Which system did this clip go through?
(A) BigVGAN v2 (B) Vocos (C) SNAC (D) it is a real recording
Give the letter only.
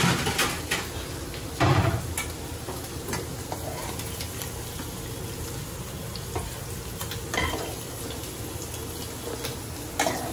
D